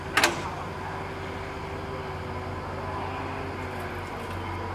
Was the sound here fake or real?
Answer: real